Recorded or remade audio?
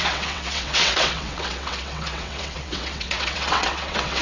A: remade